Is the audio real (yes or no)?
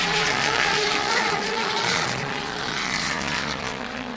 no